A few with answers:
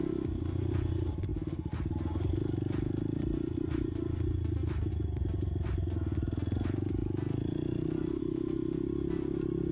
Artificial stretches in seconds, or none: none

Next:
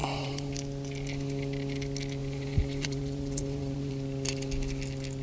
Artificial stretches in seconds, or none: 0.0-0.5 (vocoder, Vocos); 2.2-3.9

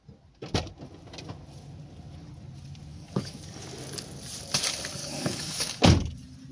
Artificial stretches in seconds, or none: 2.9-3.6 (codec, DAC); 5.0-5.8

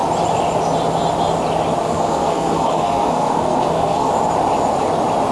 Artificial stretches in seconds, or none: 1.8-4.1 (codec, SNAC)

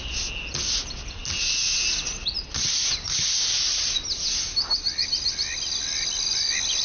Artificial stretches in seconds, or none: none

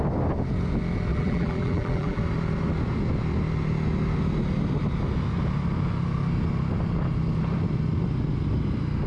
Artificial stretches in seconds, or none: 1.1-2.2 (vocoder, BigVGAN v2)